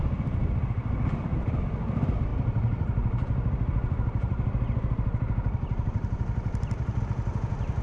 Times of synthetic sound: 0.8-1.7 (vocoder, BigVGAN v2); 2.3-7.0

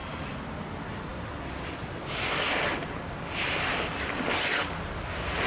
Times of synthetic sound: none

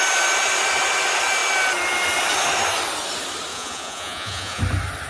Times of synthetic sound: 3.5-4.6 (vocoder, Vocos)

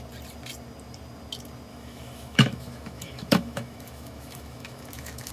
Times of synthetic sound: 1.7-5.3 (autoencoder, DAC-VAE)

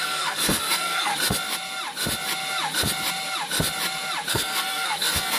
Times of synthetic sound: 0.0-1.1 (codec, SNAC); 4.3-5.4